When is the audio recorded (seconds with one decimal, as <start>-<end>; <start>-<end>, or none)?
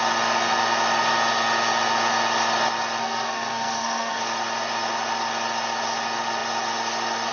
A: 0.0-3.0; 4.2-7.3